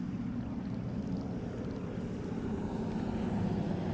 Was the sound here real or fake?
real